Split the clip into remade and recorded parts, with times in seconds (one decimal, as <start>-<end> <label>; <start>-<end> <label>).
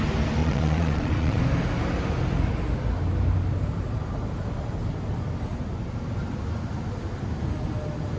0.0-0.4 recorded; 0.4-1.4 remade; 1.4-8.2 recorded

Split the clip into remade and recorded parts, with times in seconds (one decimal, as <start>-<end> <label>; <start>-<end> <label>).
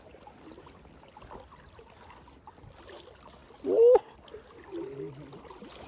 0.0-5.9 recorded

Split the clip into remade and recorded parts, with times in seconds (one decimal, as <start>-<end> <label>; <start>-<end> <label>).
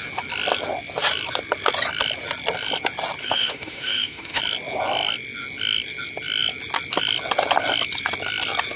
0.0-3.2 recorded; 3.2-4.4 remade; 4.4-8.8 recorded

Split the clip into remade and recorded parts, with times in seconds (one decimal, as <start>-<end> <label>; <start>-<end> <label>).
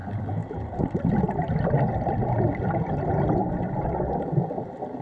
0.0-3.4 remade; 3.4-4.1 recorded; 4.1-5.0 remade